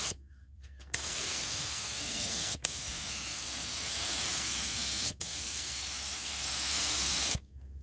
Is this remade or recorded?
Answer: remade